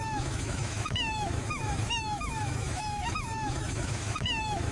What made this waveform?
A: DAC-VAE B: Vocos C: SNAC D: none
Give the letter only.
A